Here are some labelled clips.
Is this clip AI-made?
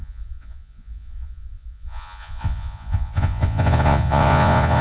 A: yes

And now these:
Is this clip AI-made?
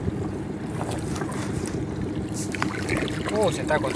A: no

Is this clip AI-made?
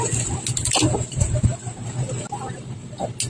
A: no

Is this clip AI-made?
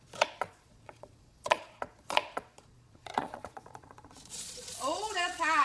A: yes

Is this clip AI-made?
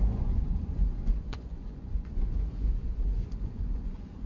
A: yes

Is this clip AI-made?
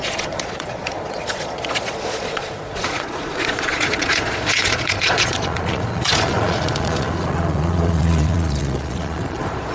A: yes